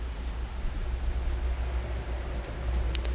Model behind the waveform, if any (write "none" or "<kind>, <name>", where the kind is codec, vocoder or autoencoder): none